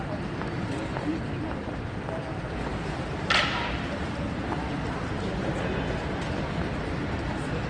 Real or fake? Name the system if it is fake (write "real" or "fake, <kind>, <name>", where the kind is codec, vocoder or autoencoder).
real